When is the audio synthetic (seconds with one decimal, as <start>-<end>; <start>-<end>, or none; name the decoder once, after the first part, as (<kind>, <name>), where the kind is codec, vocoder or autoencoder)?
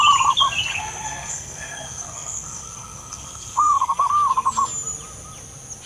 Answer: 0.7-4.1 (codec, SNAC)